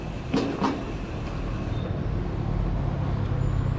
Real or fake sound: real